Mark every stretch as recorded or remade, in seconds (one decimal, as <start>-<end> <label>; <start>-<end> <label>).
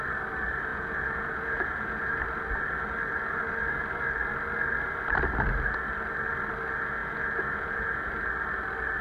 0.0-0.7 recorded; 0.7-2.2 remade; 2.2-7.0 recorded; 7.0-8.1 remade; 8.1-9.0 recorded